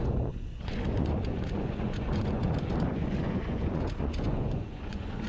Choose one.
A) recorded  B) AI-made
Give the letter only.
B